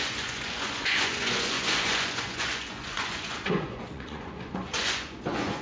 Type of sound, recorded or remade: remade